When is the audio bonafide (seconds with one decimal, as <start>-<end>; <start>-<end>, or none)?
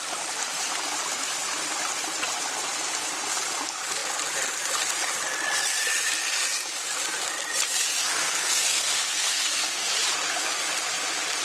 0.0-8.0; 9.9-11.4